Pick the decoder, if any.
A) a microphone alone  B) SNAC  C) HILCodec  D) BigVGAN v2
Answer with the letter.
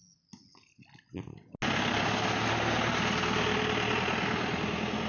A